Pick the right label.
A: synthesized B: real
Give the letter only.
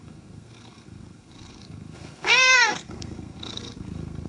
A